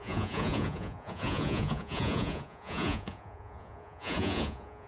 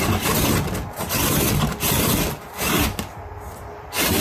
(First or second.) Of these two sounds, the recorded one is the second